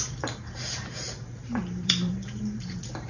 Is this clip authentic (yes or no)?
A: no